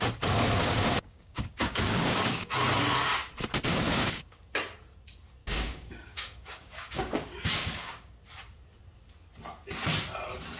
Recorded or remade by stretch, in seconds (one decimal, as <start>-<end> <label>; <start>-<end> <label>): 0.0-0.6 recorded; 0.6-2.5 remade; 2.5-3.7 recorded; 3.7-4.4 remade; 4.4-5.4 recorded; 5.4-8.1 remade; 8.1-10.6 recorded